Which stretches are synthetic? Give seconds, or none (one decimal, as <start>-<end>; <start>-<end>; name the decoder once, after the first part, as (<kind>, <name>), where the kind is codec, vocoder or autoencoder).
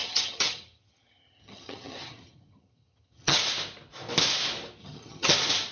0.0-3.4 (vocoder, HiFi-GAN); 4.8-5.3